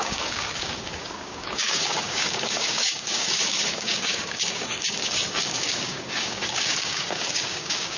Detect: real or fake fake